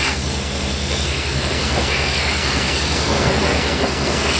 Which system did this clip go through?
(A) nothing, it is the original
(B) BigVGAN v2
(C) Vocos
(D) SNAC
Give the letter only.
D